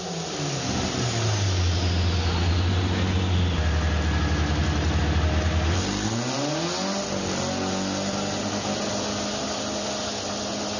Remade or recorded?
recorded